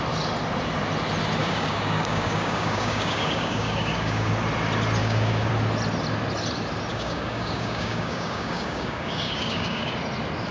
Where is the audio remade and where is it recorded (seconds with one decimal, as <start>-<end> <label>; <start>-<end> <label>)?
0.0-1.4 recorded; 1.4-4.3 remade; 4.3-5.0 recorded; 5.0-5.5 remade; 5.5-6.9 recorded; 6.9-9.9 remade; 9.9-10.5 recorded